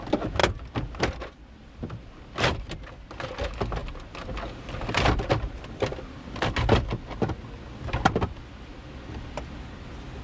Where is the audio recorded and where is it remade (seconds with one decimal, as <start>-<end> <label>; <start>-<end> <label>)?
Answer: 0.0-10.2 recorded